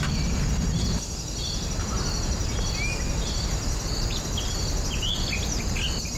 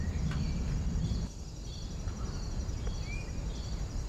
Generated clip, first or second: second